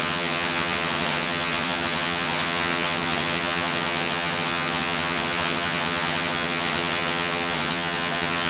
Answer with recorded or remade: remade